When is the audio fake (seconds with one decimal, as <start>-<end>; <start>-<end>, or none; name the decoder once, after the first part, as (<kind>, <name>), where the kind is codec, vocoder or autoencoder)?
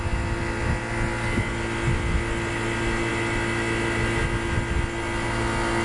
none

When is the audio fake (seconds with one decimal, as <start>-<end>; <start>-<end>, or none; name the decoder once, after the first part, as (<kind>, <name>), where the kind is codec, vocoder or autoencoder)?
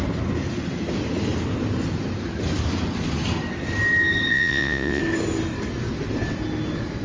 4.3-5.0 (vocoder, Vocos)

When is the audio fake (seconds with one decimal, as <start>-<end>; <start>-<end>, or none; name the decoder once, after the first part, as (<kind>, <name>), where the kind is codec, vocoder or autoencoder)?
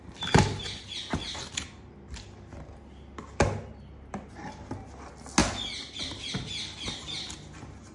none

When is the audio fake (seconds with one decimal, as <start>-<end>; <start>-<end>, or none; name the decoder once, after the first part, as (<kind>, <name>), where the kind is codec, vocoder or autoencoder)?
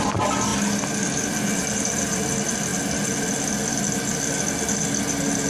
none